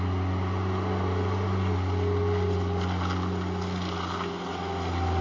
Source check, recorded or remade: recorded